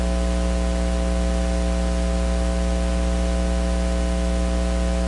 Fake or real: real